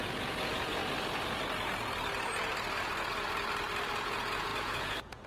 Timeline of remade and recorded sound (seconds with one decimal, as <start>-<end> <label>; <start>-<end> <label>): 0.0-0.8 remade; 0.8-4.0 recorded; 4.0-5.3 remade